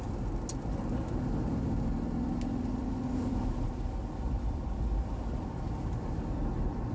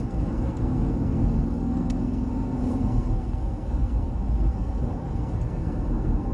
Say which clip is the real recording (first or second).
first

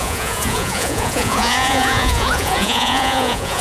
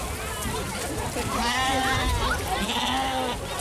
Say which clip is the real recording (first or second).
second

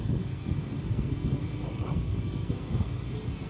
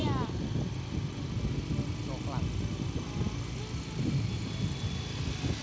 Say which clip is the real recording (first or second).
second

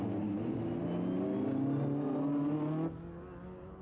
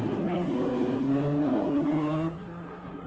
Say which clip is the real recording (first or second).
first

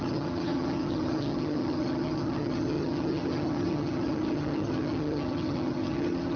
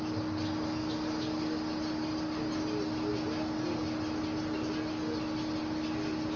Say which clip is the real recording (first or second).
second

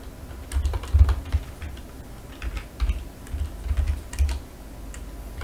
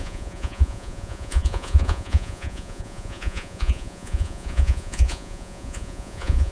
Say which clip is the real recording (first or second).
first